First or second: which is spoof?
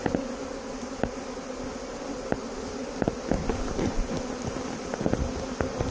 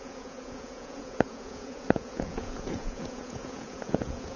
second